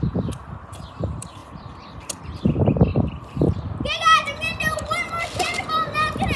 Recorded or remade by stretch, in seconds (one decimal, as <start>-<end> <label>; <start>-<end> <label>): 0.0-1.4 recorded; 1.4-2.2 remade; 2.2-6.4 recorded